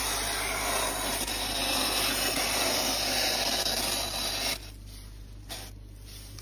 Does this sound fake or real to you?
real